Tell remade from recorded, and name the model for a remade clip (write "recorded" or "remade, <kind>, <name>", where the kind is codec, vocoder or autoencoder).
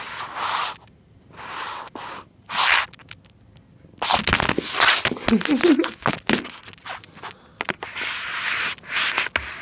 recorded